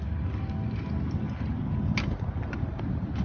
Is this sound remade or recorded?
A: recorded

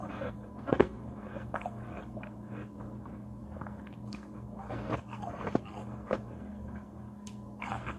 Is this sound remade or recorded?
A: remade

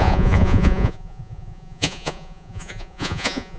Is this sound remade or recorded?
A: remade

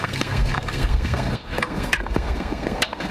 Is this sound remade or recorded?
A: remade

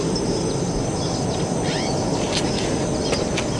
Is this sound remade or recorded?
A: recorded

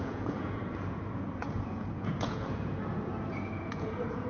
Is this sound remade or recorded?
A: remade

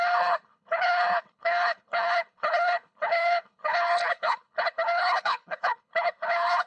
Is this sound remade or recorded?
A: remade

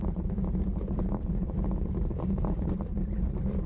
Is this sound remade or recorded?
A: remade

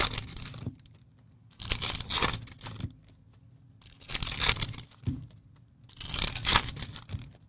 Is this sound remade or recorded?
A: recorded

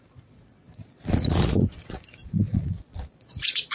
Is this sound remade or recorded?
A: remade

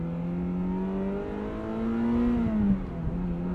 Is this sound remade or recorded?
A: recorded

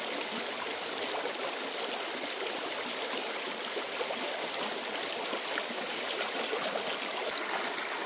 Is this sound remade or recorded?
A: recorded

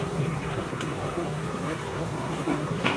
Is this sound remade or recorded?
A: remade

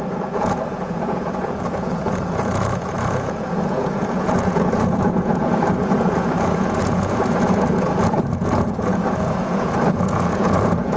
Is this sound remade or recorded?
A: remade